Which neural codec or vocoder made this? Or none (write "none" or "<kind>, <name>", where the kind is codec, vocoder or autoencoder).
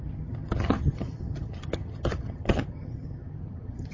vocoder, HiFi-GAN